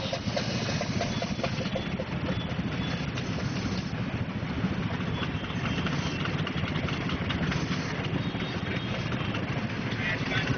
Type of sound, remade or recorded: recorded